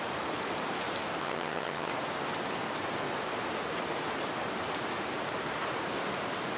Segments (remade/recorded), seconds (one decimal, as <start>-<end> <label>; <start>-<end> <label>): 0.0-1.2 recorded; 1.2-1.9 remade; 1.9-6.6 recorded